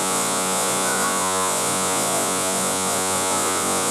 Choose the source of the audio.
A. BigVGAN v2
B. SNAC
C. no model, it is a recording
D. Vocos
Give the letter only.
D